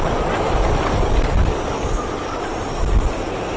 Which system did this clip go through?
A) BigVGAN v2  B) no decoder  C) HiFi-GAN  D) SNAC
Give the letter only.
B